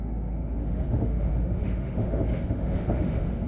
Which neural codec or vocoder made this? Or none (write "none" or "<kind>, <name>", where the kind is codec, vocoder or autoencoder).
autoencoder, DAC-VAE